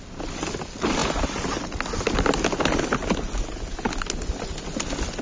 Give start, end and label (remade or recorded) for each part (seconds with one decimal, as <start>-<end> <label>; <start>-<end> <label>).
0.0-5.2 recorded

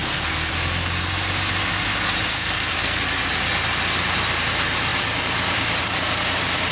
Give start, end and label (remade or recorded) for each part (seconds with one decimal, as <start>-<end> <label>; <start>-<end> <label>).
0.0-0.5 remade; 0.5-2.3 recorded; 2.3-3.0 remade; 3.0-6.7 recorded

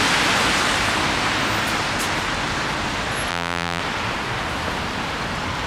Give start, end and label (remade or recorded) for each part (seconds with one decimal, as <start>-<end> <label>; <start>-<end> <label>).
0.0-3.3 recorded; 3.3-3.8 remade; 3.8-5.7 recorded

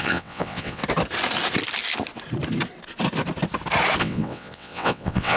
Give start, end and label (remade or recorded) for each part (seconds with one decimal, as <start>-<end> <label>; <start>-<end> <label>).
0.0-0.8 remade; 0.8-4.0 recorded; 4.0-5.4 remade